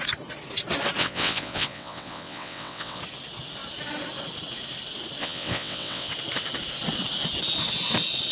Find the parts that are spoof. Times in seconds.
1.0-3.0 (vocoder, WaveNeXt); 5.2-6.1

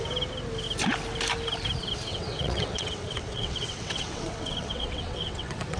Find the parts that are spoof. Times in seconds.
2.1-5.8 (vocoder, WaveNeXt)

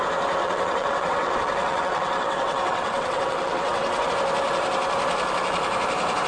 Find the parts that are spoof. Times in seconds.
0.4-4.1 (vocoder, WaveNeXt)

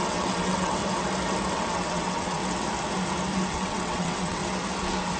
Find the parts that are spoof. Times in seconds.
0.0-0.8 (vocoder, WaveNeXt); 1.5-2.4; 3.5-4.4